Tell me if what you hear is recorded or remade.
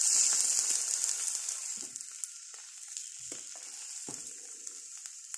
recorded